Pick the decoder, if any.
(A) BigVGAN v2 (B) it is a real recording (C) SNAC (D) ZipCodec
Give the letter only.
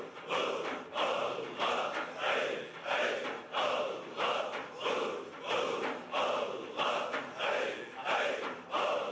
B